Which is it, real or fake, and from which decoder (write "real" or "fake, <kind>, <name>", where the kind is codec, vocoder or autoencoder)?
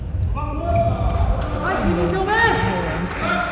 real